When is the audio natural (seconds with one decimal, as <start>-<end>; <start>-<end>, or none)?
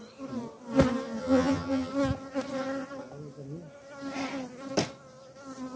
0.0-1.2; 1.9-5.8